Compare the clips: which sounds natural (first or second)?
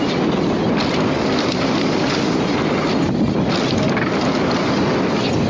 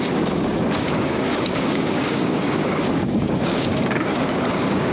first